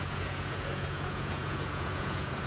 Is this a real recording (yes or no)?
no